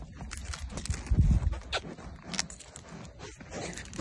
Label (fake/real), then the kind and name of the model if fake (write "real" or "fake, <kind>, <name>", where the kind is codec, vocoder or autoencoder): real